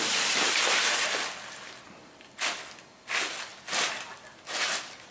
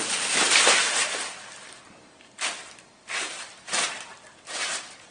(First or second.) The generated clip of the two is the second